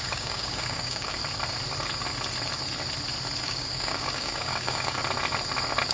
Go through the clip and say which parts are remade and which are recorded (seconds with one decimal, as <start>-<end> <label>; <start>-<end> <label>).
0.0-1.2 remade; 1.2-3.4 recorded; 3.4-5.0 remade; 5.0-5.9 recorded

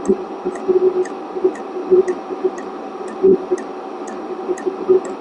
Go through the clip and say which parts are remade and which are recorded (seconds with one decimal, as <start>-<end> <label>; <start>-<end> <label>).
0.0-1.8 recorded; 1.8-4.8 remade; 4.8-5.2 recorded